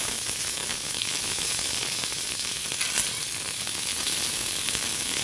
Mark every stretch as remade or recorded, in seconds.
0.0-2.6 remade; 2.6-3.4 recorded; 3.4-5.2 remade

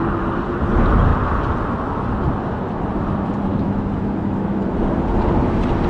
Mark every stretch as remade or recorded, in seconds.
0.0-3.5 recorded; 3.5-4.6 remade; 4.6-5.9 recorded

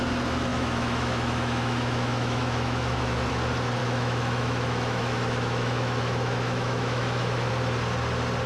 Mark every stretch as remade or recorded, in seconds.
0.0-0.5 recorded; 0.5-3.3 remade; 3.3-3.8 recorded; 3.8-7.5 remade; 7.5-8.5 recorded

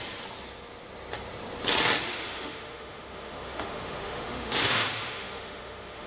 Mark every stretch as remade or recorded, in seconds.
0.0-2.1 recorded; 2.1-6.1 remade

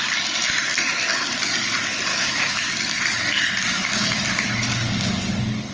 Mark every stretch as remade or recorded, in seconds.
0.0-2.1 recorded; 2.1-2.7 remade; 2.7-5.7 recorded

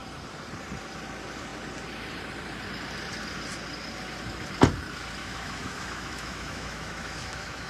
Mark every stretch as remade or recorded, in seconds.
0.0-5.2 recorded; 5.2-7.7 remade